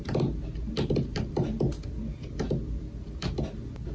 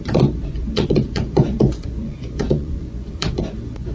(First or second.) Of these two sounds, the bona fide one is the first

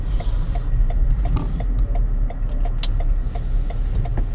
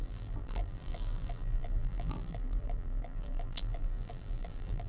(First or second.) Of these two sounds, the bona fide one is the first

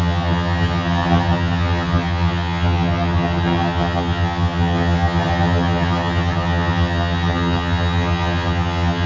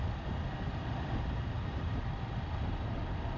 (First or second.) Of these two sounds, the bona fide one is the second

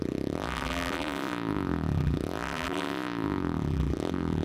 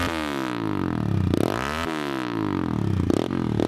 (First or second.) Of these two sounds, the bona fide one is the second